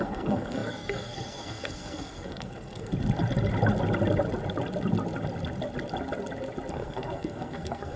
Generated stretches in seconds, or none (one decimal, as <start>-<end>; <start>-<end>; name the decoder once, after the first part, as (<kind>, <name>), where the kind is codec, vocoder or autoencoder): 0.0-2.9 (codec, SNAC); 6.7-8.0